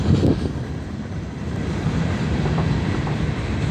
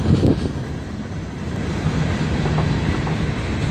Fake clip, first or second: first